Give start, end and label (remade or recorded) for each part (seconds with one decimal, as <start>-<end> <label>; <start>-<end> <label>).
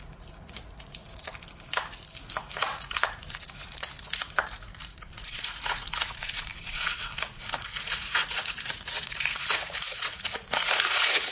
0.0-1.3 remade; 1.3-2.4 recorded; 2.4-11.3 remade